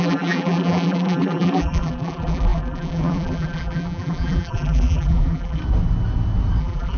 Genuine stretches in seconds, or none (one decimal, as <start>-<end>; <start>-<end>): 5.6-6.6